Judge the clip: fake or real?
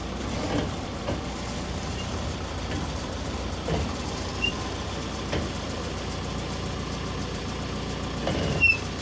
fake